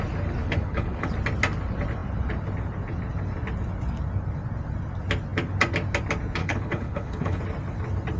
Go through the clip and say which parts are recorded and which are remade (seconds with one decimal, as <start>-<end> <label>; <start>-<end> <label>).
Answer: 0.0-0.4 recorded; 0.4-1.1 remade; 1.1-6.4 recorded; 6.4-7.4 remade; 7.4-8.2 recorded